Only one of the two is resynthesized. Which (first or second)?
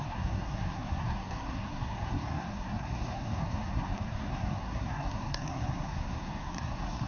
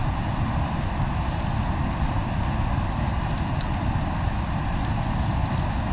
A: first